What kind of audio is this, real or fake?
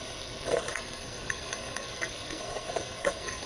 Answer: fake